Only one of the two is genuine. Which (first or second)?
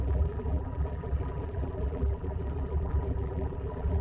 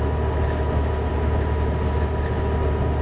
second